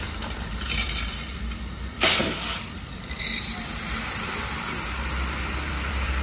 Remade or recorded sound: remade